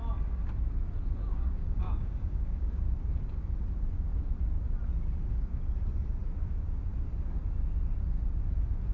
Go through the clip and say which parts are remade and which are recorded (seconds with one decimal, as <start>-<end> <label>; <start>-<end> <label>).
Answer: 0.0-1.3 recorded; 1.3-2.7 remade; 2.7-8.9 recorded